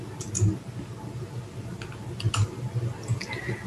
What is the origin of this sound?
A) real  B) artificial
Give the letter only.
A